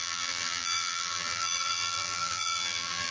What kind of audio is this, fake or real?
fake